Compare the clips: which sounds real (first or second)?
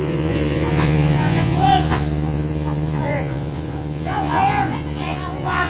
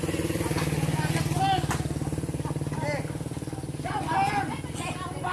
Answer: second